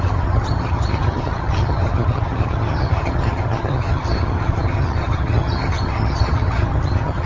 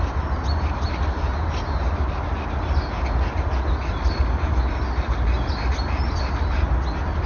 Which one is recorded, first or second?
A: second